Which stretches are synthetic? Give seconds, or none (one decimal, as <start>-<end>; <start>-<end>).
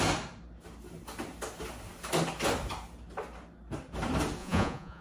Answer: 4.4-5.0